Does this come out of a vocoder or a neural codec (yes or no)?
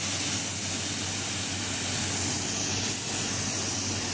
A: no